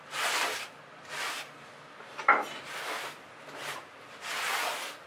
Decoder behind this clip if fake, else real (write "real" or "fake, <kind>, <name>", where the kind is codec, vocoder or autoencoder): fake, vocoder, BigVGAN v2